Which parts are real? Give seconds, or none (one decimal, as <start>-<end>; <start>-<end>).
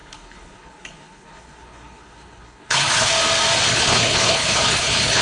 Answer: 3.1-3.7